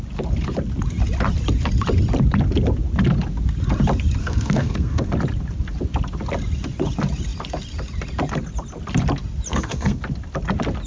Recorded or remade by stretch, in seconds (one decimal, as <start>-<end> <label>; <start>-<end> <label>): 0.0-4.2 recorded; 4.2-5.1 remade; 5.1-9.5 recorded; 9.5-10.0 remade; 10.0-10.9 recorded